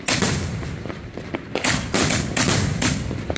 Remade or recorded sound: recorded